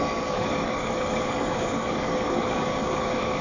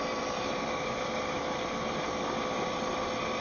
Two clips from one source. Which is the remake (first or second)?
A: first